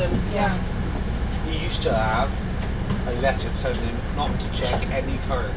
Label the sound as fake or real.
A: real